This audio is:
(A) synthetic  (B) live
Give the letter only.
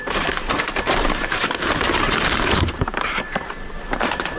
A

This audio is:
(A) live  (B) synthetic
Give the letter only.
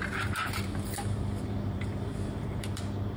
B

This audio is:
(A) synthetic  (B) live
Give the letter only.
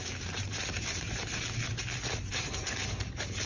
A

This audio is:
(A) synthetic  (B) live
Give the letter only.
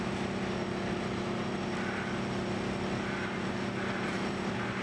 B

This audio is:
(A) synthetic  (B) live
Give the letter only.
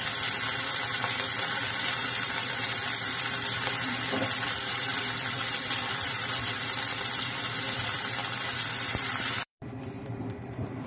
A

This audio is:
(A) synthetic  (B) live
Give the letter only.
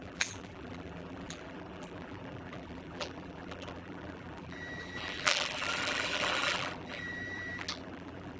A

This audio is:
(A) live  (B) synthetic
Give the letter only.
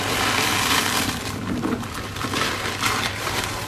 B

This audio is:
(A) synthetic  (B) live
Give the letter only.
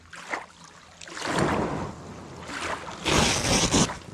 B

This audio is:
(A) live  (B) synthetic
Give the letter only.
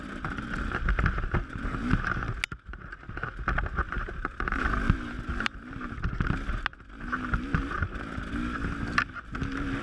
A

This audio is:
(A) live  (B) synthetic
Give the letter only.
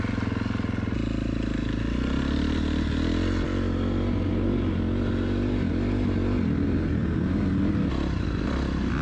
A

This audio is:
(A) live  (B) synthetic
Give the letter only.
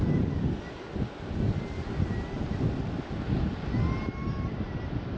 A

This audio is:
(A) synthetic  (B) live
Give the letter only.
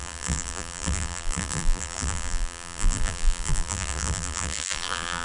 A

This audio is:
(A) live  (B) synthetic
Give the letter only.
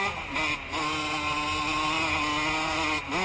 A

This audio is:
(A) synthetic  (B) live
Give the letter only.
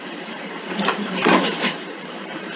A